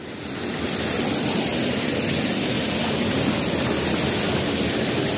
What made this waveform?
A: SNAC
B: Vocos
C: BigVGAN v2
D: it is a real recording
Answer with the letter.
D